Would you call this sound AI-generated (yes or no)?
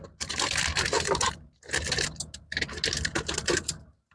no